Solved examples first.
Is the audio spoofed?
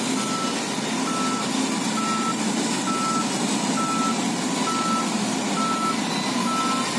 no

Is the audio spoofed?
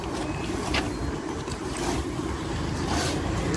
no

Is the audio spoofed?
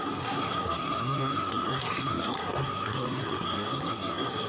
yes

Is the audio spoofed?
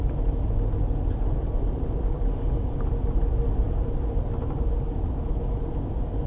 no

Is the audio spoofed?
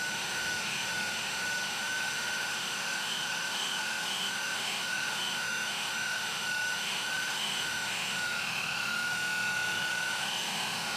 yes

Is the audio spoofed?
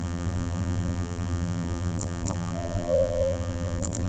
yes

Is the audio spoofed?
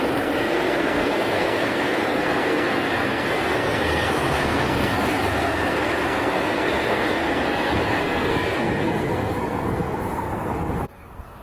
yes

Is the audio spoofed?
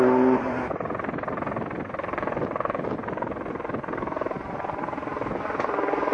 no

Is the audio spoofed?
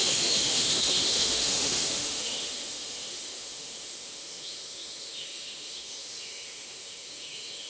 yes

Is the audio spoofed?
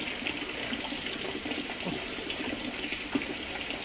no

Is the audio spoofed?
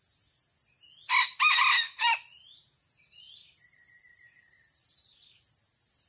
no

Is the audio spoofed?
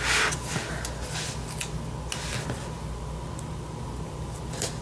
no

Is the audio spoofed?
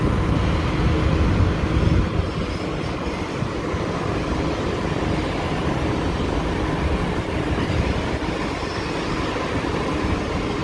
no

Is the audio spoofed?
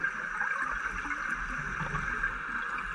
no